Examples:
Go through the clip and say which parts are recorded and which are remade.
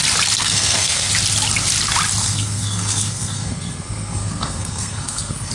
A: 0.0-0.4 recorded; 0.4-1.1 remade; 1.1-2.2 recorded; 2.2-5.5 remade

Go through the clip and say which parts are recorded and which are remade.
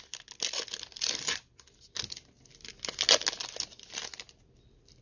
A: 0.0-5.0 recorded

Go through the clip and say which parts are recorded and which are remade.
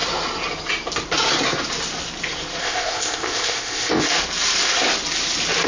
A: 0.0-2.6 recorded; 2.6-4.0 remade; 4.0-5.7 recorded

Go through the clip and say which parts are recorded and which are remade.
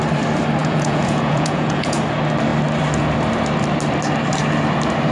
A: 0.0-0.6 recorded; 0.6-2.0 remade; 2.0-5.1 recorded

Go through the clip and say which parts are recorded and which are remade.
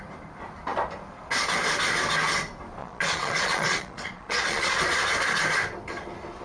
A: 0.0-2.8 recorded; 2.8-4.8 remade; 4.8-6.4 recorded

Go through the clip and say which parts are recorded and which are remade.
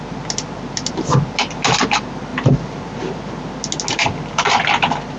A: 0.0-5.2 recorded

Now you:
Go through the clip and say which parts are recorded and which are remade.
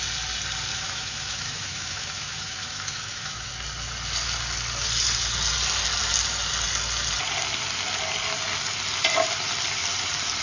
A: 0.0-0.7 recorded; 0.7-3.5 remade; 3.5-10.4 recorded